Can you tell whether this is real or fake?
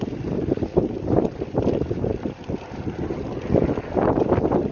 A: real